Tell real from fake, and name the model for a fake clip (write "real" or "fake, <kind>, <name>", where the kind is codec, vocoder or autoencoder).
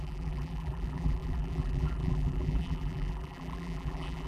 fake, vocoder, BigVGAN v2